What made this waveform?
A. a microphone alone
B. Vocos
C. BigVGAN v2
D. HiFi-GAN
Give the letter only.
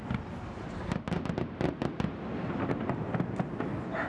A